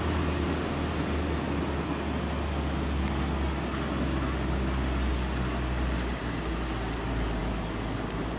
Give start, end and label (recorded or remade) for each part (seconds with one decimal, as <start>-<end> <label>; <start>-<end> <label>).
0.0-8.4 recorded